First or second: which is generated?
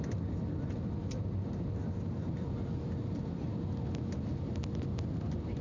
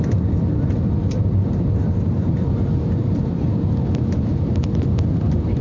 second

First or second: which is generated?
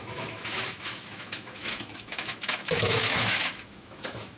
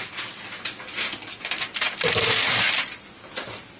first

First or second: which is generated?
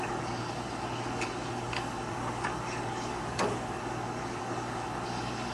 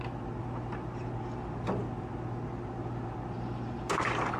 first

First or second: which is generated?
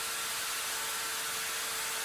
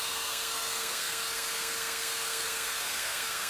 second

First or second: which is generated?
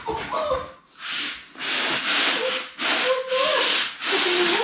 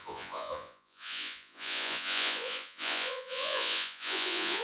second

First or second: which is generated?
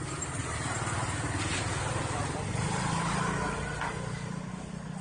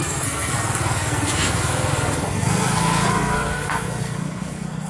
second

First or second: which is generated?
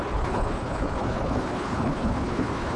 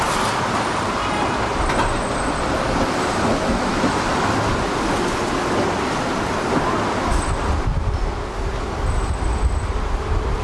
first